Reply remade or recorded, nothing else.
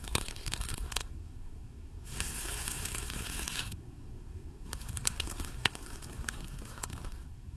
remade